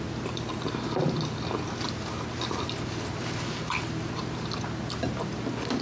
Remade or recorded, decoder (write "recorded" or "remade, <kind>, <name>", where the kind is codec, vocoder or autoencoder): recorded